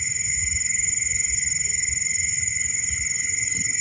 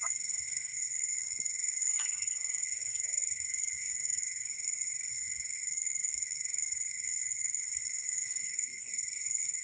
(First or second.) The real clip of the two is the first